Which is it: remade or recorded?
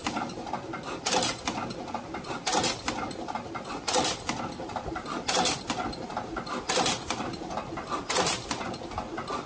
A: recorded